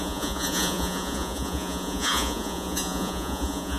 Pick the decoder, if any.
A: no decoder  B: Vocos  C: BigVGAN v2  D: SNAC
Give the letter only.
B